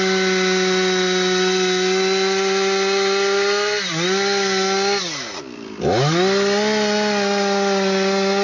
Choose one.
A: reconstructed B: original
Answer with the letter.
B